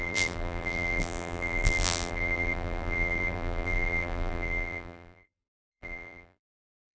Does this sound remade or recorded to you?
remade